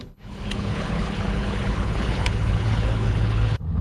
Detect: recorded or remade remade